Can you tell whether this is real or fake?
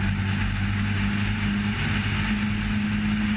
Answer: real